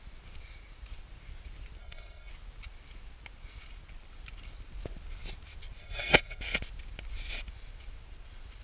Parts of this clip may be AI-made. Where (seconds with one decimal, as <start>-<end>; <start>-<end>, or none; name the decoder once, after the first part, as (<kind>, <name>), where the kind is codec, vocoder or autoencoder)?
1.8-2.3 (codec, SNAC); 5.8-6.4